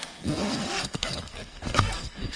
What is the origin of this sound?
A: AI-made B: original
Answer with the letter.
A